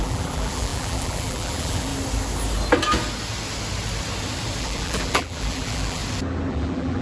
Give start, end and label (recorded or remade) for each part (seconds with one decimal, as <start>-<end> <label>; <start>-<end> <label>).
0.0-1.9 remade; 1.9-4.6 recorded; 4.6-6.0 remade; 6.0-6.5 recorded; 6.5-7.0 remade